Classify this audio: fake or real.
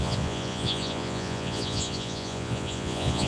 fake